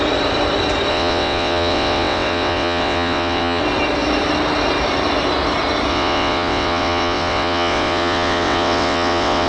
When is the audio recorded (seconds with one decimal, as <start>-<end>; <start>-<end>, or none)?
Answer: 0.0-0.9; 3.6-5.9